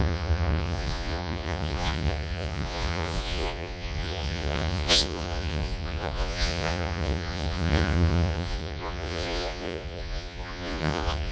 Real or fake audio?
fake